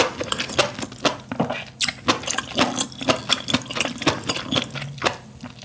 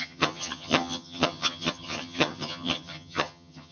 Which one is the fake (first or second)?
second